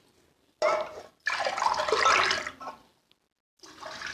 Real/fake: real